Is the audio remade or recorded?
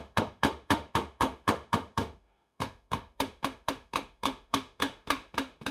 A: remade